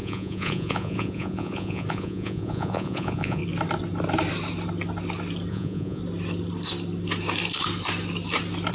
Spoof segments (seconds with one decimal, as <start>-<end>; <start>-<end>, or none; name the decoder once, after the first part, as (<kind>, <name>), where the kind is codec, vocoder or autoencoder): 0.0-3.4 (vocoder, Vocos); 5.5-6.0